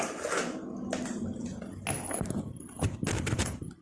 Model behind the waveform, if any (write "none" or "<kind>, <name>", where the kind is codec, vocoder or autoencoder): none